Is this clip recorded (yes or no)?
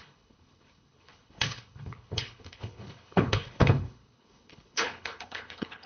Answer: no